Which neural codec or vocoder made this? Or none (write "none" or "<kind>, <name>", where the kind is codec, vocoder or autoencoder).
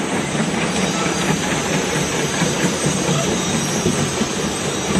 vocoder, BigVGAN v2